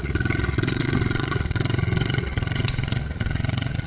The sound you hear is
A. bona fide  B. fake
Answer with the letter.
B